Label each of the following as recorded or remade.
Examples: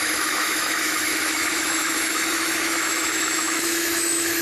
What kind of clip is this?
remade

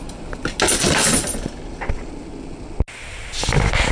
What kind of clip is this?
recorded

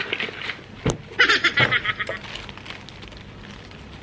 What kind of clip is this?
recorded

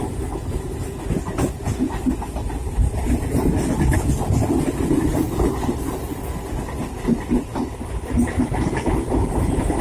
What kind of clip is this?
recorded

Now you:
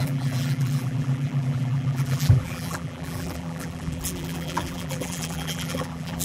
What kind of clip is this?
remade